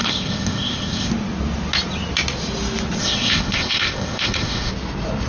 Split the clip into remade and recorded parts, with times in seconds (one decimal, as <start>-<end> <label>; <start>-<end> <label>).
0.0-1.1 remade; 1.1-3.0 recorded; 3.0-4.7 remade; 4.7-5.3 recorded